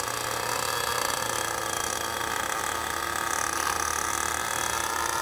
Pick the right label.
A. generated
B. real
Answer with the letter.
B